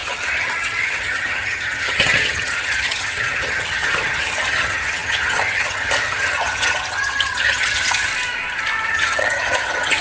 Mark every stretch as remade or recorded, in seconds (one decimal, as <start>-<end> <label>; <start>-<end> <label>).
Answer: 0.0-8.1 remade; 8.1-8.9 recorded; 8.9-10.0 remade

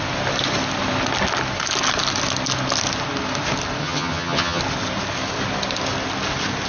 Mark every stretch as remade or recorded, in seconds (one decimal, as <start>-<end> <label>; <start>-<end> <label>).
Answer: 0.0-3.8 recorded; 3.8-4.6 remade; 4.6-6.7 recorded

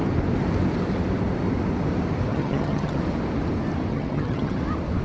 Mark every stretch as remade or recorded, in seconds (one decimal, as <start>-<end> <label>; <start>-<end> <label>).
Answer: 0.0-2.3 recorded; 2.3-3.0 remade; 3.0-3.9 recorded; 3.9-4.6 remade; 4.6-5.0 recorded